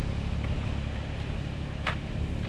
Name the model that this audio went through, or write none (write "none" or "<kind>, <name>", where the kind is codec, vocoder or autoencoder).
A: none